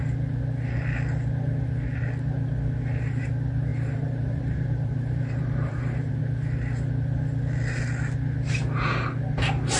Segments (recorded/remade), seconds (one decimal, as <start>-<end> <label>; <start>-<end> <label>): 0.0-3.7 recorded; 3.7-6.2 remade; 6.2-9.8 recorded